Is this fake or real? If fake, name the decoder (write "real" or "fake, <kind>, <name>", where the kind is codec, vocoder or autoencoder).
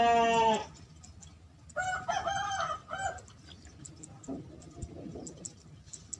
real